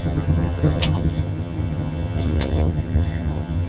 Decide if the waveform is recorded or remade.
remade